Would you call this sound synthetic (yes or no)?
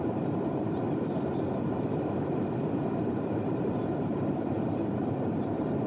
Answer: yes